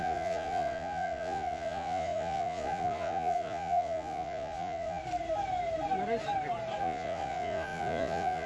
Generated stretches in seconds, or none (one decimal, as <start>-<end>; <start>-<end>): 0.0-5.0; 6.8-8.5